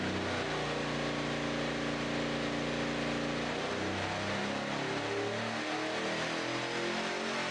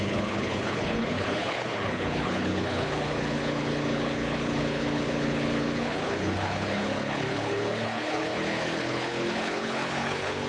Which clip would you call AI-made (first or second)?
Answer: second